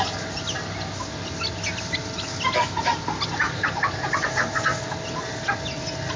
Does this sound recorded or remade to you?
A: recorded